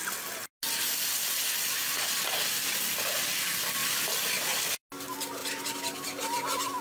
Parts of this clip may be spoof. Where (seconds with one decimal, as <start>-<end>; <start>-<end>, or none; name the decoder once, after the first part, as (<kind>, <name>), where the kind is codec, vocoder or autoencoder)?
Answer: 3.8-4.3 (vocoder, BigVGAN v2); 5.4-6.8